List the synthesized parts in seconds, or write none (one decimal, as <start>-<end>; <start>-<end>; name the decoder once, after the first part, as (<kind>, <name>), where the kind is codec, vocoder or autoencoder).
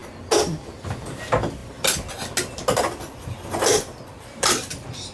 none